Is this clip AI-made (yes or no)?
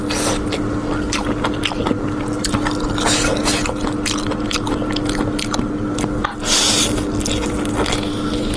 no